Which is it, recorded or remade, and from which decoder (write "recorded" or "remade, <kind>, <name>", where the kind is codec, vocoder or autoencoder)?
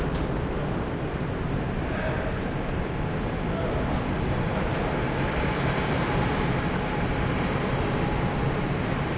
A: recorded